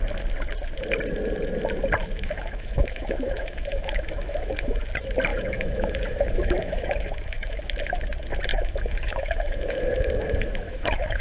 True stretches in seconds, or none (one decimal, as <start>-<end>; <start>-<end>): 0.0-2.0; 4.8-5.3; 7.6-8.5